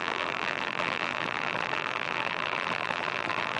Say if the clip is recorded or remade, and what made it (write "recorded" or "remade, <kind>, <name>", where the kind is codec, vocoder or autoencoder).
remade, vocoder, BigVGAN v2